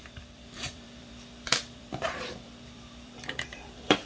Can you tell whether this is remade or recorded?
remade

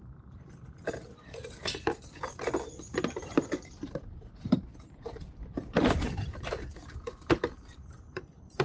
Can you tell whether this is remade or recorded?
remade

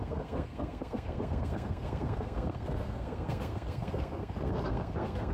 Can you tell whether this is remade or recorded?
remade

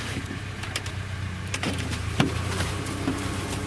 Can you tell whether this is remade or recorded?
remade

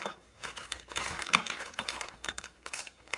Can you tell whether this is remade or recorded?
remade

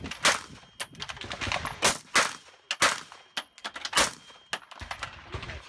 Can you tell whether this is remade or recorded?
recorded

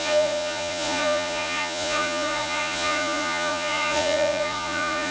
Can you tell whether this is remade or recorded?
remade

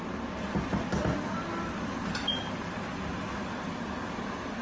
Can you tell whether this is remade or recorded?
recorded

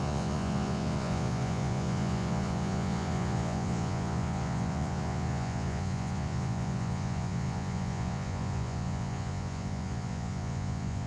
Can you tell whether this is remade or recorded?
remade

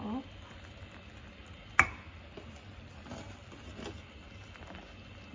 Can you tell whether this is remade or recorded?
recorded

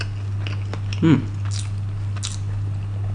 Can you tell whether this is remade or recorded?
recorded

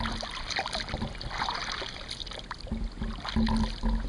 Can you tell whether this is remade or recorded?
recorded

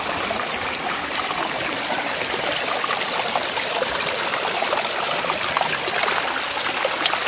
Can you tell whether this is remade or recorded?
recorded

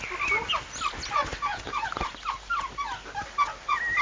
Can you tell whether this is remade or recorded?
recorded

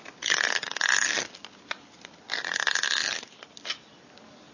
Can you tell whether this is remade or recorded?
recorded